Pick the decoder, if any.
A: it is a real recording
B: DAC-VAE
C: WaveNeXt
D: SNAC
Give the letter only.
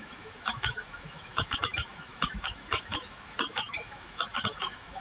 B